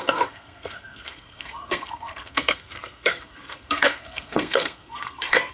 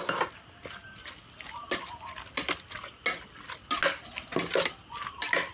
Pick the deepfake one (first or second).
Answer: first